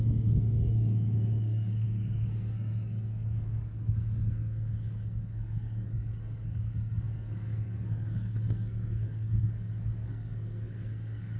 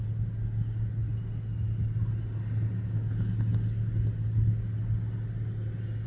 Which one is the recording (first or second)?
second